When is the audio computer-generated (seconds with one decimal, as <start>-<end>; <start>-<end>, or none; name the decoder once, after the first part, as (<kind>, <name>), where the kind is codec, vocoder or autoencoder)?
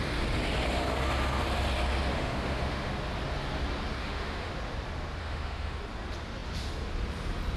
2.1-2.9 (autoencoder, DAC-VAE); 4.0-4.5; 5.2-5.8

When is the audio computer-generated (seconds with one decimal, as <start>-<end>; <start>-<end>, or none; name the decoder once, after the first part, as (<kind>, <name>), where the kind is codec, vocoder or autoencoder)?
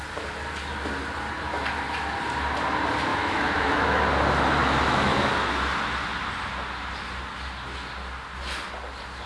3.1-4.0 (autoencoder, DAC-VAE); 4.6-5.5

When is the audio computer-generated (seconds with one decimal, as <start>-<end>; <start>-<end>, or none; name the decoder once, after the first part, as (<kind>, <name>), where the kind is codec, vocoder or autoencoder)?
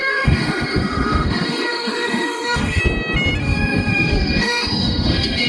0.0-2.8 (autoencoder, DAC-VAE); 3.4-5.5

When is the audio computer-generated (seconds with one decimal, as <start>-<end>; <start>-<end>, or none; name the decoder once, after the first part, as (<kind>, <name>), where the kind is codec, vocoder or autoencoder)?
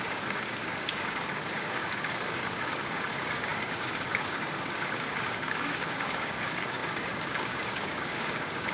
0.0-8.7 (codec, DAC)